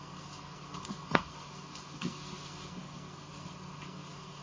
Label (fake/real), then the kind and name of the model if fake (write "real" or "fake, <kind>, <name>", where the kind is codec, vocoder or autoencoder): fake, codec, SNAC